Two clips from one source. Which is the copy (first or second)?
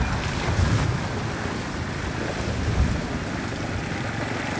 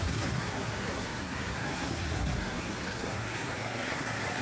second